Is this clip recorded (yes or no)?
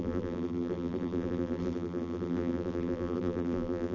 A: no